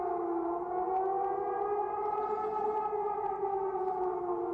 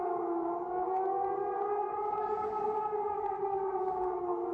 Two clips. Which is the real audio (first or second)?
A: first